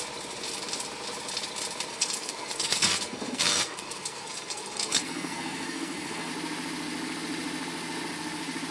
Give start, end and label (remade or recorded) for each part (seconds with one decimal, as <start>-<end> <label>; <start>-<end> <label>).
0.0-1.9 recorded; 1.9-6.3 remade; 6.3-8.7 recorded